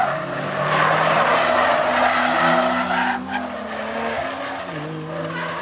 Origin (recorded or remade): recorded